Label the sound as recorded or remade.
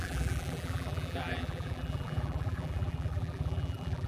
remade